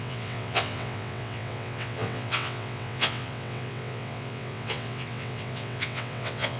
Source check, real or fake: fake